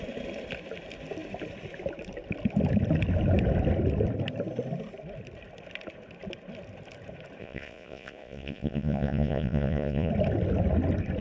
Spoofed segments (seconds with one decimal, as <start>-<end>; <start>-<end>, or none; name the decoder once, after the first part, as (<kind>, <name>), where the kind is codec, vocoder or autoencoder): 7.4-10.1 (vocoder, Vocos)